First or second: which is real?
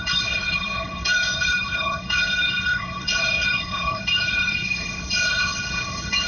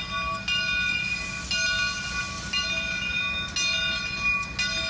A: second